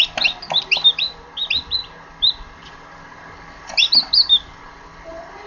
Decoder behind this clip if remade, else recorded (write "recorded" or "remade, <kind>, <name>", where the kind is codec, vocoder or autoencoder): recorded